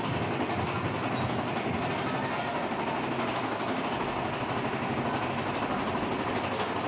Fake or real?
real